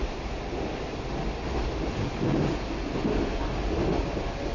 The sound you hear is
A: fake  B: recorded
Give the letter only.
B